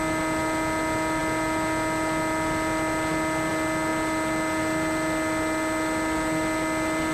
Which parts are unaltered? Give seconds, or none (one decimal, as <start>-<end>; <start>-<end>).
0.0-7.1